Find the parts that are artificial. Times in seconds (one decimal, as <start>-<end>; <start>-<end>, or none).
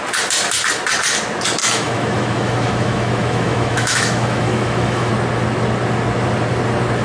1.6-5.1